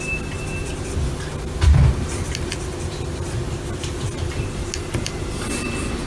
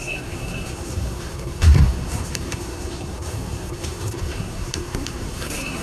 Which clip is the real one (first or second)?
first